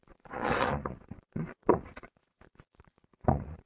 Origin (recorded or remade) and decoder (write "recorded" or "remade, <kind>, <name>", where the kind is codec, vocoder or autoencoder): remade, vocoder, Vocos